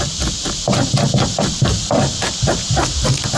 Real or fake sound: real